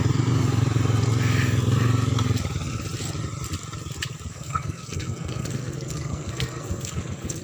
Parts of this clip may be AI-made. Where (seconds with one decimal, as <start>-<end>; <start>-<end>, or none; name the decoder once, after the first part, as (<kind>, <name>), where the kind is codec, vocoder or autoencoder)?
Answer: 4.3-7.4 (codec, SNAC)